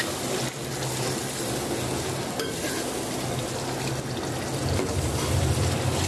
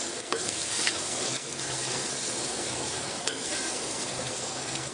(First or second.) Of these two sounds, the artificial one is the second